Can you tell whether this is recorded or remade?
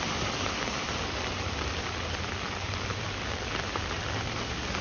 recorded